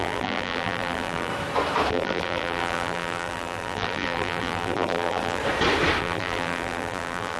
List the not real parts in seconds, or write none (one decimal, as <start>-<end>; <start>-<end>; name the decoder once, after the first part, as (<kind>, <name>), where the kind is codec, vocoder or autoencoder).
0.0-1.3 (vocoder, BigVGAN v2); 1.9-5.4; 6.0-7.4